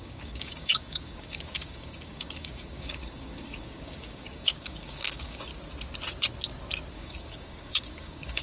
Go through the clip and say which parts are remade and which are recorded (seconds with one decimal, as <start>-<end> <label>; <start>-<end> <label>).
0.0-5.5 remade; 5.5-6.9 recorded; 6.9-8.4 remade